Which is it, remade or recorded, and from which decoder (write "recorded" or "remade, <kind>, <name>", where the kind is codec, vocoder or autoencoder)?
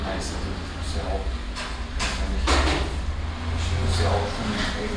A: recorded